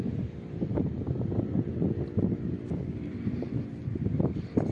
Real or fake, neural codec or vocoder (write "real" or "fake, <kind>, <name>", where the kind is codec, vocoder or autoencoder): fake, vocoder, BigVGAN v2